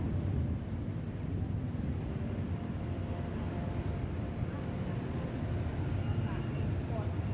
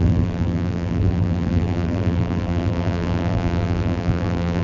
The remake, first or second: second